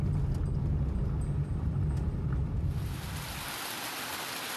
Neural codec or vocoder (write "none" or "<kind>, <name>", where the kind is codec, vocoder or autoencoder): none